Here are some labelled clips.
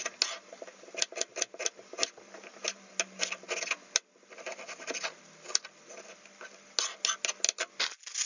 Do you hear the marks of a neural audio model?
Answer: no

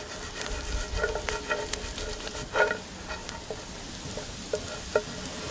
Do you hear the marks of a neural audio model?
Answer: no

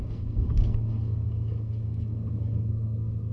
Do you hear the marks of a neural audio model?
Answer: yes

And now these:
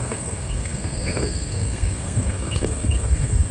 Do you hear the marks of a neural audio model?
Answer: yes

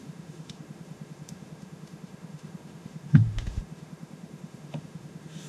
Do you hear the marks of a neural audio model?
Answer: yes